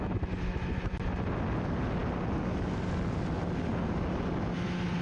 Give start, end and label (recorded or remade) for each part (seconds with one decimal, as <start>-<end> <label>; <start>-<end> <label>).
0.0-5.0 recorded